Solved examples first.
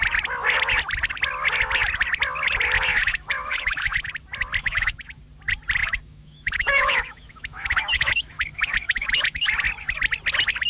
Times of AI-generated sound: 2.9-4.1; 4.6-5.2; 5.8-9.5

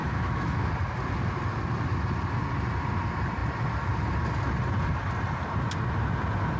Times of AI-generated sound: 0.0-0.7

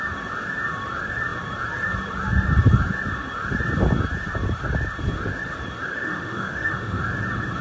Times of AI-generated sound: 5.9-7.0

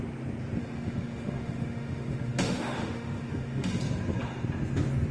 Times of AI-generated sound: 0.6-3.7

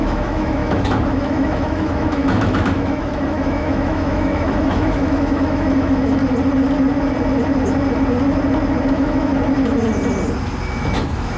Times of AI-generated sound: 0.0-6.2; 8.9-9.3; 10.8-11.4